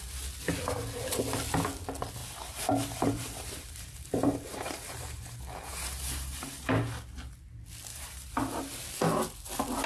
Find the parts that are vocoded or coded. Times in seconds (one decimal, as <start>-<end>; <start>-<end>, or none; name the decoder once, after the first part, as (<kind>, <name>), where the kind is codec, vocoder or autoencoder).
2.2-7.0 (vocoder, BigVGAN v2); 7.9-8.6